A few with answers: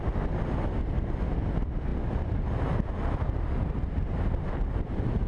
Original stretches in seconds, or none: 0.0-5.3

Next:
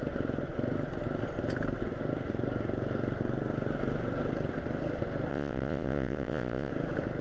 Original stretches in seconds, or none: 0.0-5.3; 6.7-7.2

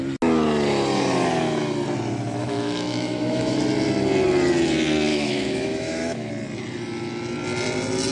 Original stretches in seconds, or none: 0.0-2.4; 3.6-5.1; 6.3-8.1